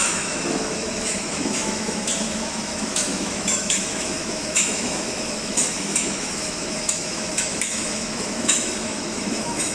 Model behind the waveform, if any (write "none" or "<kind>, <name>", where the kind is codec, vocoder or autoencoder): autoencoder, DAC-VAE